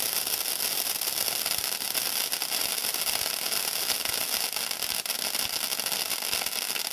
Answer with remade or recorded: recorded